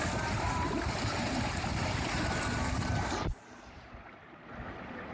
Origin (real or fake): fake